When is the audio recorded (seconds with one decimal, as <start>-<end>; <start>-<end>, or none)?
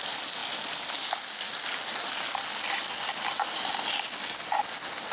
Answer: 0.0-5.1